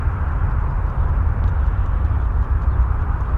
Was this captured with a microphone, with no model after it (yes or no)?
no